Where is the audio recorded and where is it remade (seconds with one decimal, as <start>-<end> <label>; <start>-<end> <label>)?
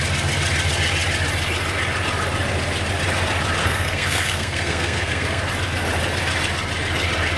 0.0-3.6 recorded; 3.6-5.5 remade; 5.5-7.4 recorded